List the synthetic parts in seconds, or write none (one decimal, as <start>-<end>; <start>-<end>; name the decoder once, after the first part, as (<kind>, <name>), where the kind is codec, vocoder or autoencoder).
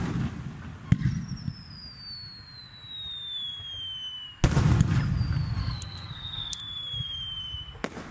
5.6-6.6 (codec, SNAC)